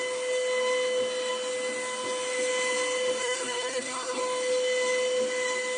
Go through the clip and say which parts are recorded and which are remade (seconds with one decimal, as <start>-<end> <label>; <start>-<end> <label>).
0.0-3.2 recorded; 3.2-4.2 remade; 4.2-5.8 recorded